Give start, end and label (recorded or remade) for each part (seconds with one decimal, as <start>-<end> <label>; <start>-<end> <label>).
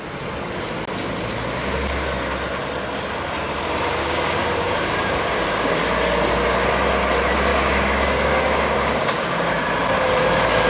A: 0.0-4.0 recorded; 4.0-5.8 remade; 5.8-7.5 recorded; 7.5-9.6 remade; 9.6-10.7 recorded